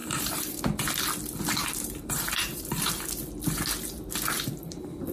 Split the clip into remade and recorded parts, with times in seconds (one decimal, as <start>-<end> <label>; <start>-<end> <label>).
0.0-0.6 remade; 0.6-1.6 recorded; 1.6-2.9 remade; 2.9-5.1 recorded